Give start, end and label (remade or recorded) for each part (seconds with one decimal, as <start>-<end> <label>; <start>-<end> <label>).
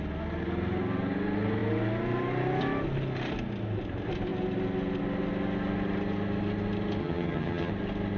0.0-7.0 recorded; 7.0-7.7 remade; 7.7-8.2 recorded